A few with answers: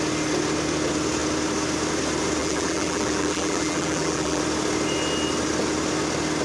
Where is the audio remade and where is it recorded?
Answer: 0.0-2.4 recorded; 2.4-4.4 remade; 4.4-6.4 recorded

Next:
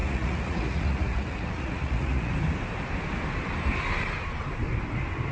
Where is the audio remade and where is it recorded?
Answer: 0.0-2.3 remade; 2.3-5.3 recorded

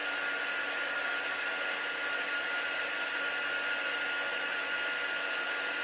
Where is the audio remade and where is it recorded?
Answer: 0.0-5.8 recorded

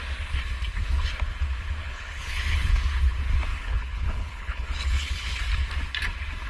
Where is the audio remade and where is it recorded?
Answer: 0.0-1.8 recorded; 1.8-2.8 remade; 2.8-3.5 recorded; 3.5-5.4 remade; 5.4-6.5 recorded

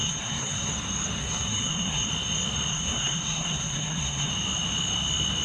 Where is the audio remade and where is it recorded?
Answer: 0.0-0.7 remade; 0.7-1.2 recorded; 1.2-2.1 remade; 2.1-2.7 recorded; 2.7-4.3 remade; 4.3-5.4 recorded

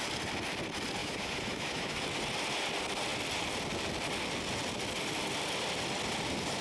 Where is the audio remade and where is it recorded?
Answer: 0.0-1.0 recorded; 1.0-2.0 remade; 2.0-6.6 recorded

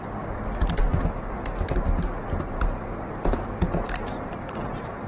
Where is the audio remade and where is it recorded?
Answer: 0.0-4.0 recorded; 4.0-5.1 remade